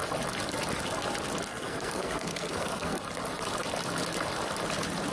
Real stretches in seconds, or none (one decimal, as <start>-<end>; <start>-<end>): 0.0-1.5; 3.0-5.1